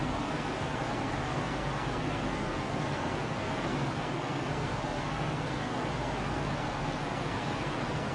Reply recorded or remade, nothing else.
remade